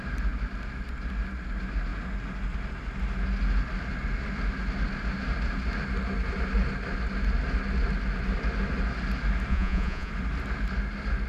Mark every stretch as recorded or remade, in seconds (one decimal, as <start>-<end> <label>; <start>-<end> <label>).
0.0-9.5 recorded; 9.5-10.1 remade; 10.1-11.3 recorded